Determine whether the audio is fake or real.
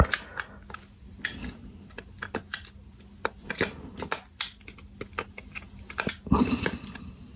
real